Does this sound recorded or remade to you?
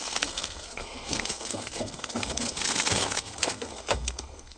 remade